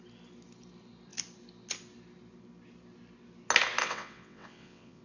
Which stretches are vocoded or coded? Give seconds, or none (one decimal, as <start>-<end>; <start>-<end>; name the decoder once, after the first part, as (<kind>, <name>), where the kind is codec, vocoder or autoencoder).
3.8-5.0 (vocoder, WaveNeXt)